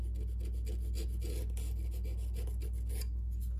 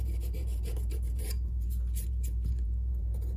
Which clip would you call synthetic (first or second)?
second